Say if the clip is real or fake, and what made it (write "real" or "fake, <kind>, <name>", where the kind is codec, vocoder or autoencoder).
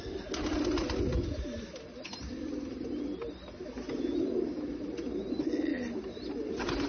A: real